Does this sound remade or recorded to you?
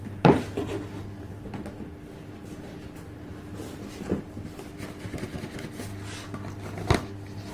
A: recorded